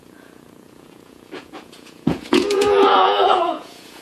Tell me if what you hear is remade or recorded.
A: remade